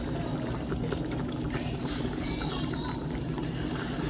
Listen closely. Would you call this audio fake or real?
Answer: fake